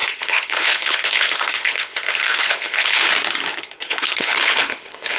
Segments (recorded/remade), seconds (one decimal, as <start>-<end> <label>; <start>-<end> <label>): 0.0-3.1 remade; 3.1-3.5 recorded; 3.5-5.2 remade